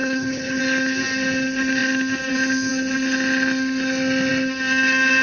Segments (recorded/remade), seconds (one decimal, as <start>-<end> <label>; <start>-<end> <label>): 0.0-0.6 remade; 0.6-5.2 recorded